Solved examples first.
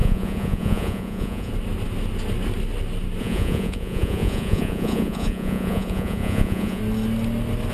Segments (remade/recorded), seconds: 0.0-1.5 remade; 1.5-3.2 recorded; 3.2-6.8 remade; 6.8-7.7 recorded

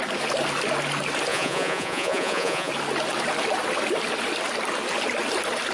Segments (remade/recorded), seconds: 0.0-1.3 recorded; 1.3-2.7 remade; 2.7-5.7 recorded